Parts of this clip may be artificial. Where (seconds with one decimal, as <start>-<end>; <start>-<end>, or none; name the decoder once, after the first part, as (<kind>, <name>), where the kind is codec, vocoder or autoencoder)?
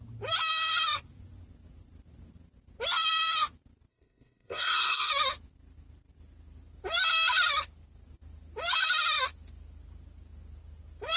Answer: 3.9-5.1 (codec, SNAC)